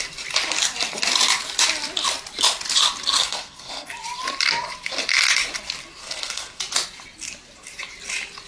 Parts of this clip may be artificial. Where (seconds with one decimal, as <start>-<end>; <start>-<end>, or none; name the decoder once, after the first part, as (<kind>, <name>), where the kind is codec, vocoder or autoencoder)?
3.2-3.9 (codec, SNAC); 6.0-6.6